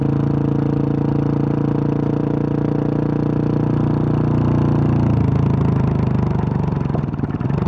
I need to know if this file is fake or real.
real